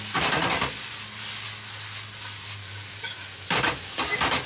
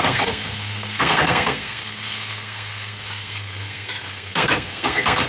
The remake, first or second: second